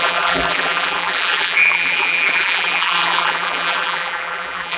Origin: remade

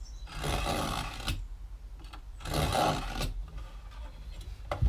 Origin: recorded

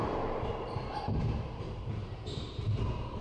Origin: remade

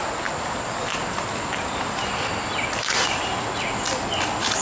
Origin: recorded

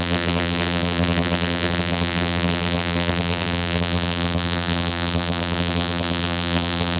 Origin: remade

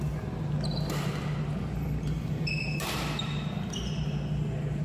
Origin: recorded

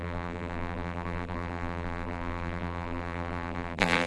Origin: remade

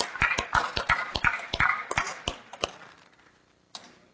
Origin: remade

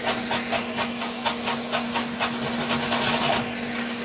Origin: recorded